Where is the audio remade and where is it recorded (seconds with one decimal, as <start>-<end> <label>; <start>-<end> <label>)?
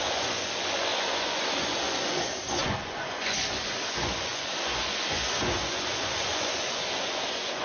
0.0-7.6 remade